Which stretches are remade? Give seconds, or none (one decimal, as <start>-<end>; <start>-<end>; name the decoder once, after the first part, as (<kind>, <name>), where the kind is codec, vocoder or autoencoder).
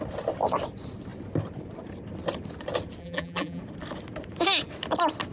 3.0-3.6 (vocoder, BigVGAN v2)